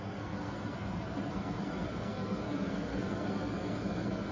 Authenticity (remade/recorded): remade